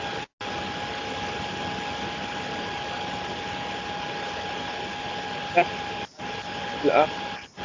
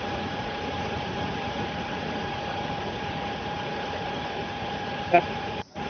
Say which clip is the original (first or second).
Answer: first